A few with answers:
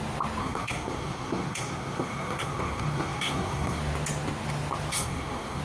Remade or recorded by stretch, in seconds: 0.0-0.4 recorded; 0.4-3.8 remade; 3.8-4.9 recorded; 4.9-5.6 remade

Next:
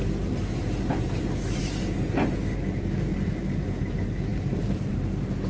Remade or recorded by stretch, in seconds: 0.0-3.1 recorded; 3.1-3.8 remade; 3.8-4.3 recorded; 4.3-4.9 remade; 4.9-5.5 recorded

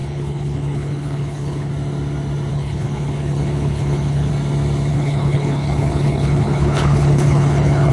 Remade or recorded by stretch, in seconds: 0.0-1.7 remade; 1.7-2.5 recorded; 2.5-4.3 remade; 4.3-4.9 recorded; 4.9-7.9 remade

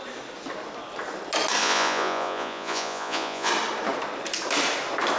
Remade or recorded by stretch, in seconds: 0.0-1.6 recorded; 1.6-3.5 remade; 3.5-5.2 recorded

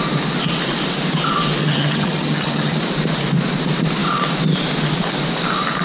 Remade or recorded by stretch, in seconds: 0.0-1.6 recorded; 1.6-2.8 remade; 2.8-5.8 recorded

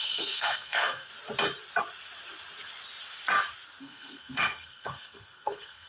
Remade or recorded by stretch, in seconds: 0.0-1.1 remade; 1.1-3.8 recorded; 3.8-5.9 remade

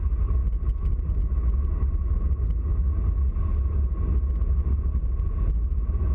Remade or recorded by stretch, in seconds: 0.0-6.1 recorded

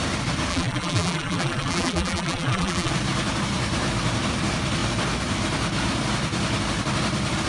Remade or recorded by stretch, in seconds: 0.0-0.5 recorded; 0.5-2.9 remade; 2.9-7.5 recorded